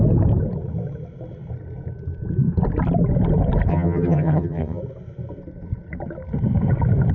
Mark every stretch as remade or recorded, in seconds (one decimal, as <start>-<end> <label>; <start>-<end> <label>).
0.0-3.7 recorded; 3.7-4.8 remade; 4.8-7.1 recorded